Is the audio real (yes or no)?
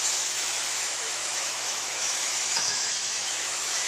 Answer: no